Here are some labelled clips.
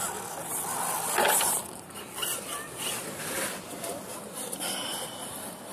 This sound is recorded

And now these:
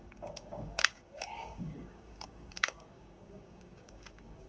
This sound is remade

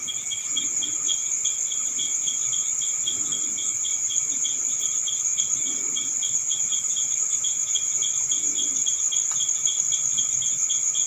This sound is recorded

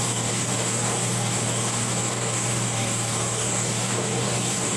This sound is remade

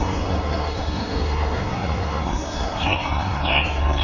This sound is remade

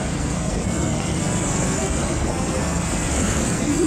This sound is remade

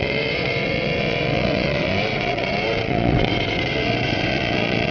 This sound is remade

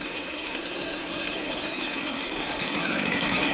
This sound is remade